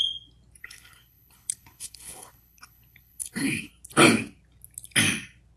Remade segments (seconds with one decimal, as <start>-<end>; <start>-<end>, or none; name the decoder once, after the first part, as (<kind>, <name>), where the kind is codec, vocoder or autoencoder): 0.6-3.7 (codec, HILCodec)